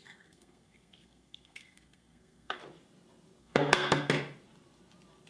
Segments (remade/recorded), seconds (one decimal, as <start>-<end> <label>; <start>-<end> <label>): 0.0-2.6 remade; 2.6-3.4 recorded; 3.4-4.1 remade; 4.1-5.3 recorded